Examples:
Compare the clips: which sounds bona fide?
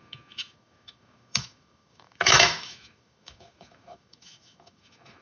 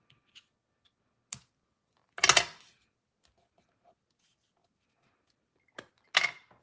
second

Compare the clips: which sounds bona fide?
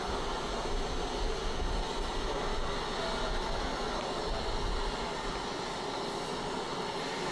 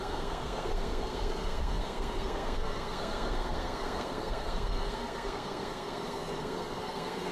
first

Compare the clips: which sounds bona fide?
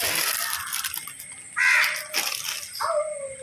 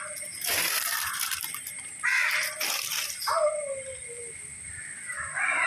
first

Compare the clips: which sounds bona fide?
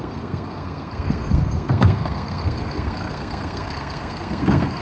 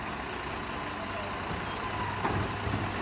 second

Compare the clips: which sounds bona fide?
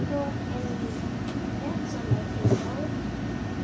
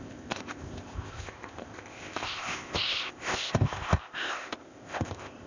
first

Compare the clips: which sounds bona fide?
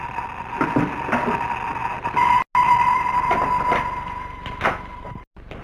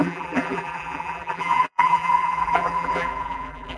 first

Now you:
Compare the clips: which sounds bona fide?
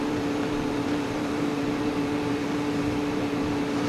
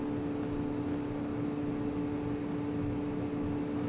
second